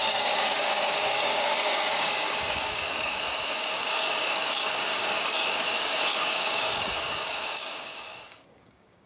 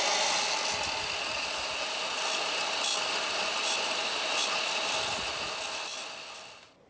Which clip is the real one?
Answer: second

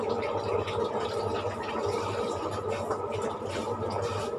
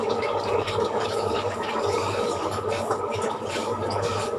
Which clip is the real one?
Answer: first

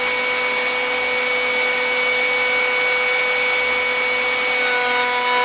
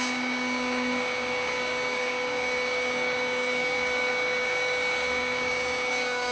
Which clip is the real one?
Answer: first